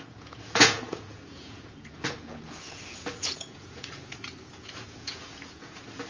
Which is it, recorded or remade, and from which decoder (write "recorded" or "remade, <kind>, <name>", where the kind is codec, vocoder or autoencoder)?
remade, vocoder, Vocos